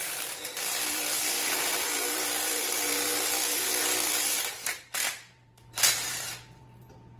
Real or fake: fake